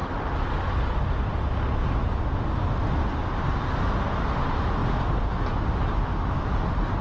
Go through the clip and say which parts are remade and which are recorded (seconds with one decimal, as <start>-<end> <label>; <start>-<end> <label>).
0.0-7.0 recorded